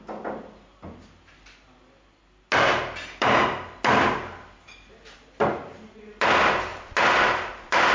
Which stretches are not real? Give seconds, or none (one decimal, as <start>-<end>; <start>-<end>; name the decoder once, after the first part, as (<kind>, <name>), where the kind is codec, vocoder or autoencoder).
none